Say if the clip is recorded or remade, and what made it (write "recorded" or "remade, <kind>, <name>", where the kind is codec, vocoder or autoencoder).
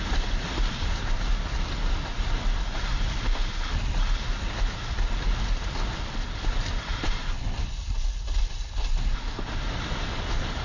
recorded